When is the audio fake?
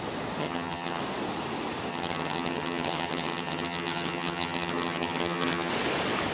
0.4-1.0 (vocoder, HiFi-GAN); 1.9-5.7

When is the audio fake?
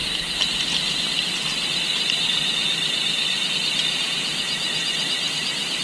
none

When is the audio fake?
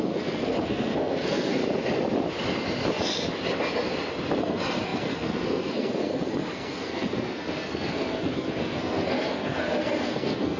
0.0-1.6 (codec, SNAC); 4.4-10.6